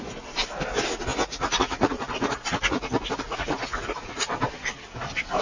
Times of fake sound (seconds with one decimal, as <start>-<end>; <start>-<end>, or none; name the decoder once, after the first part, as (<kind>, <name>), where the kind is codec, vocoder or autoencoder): 1.1-4.3 (vocoder, Vocos)